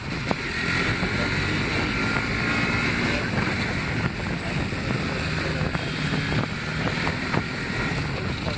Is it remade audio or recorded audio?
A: recorded